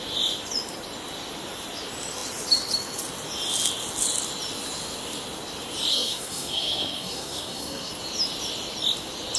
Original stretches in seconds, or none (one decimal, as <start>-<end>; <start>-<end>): 0.0-5.9; 7.9-9.4